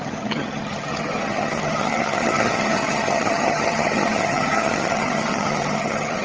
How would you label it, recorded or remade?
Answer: remade